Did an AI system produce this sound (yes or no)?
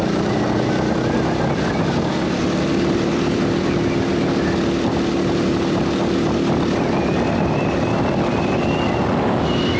no